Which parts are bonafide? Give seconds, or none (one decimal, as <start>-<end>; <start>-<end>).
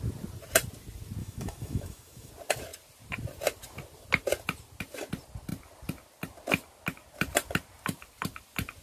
0.0-1.2; 2.3-8.8